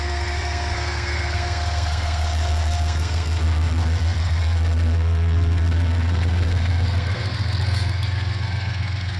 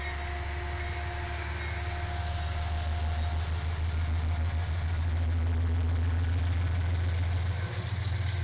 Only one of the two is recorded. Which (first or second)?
second